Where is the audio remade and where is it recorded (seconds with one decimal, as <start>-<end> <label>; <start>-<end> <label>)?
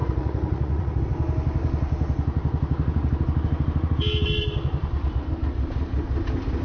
0.0-1.0 remade; 1.0-6.6 recorded